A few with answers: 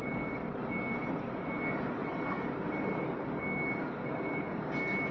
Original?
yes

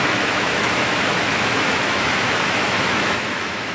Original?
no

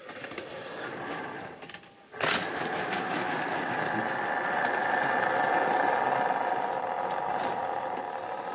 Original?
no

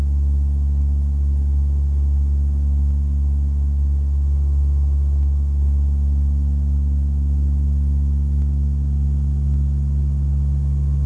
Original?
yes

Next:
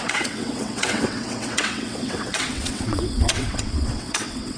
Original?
no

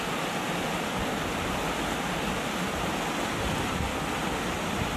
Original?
yes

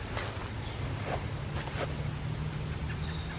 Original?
yes